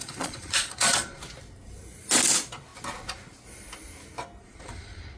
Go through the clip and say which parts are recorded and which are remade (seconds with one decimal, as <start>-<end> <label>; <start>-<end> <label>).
0.0-1.2 remade; 1.2-4.4 recorded; 4.4-5.2 remade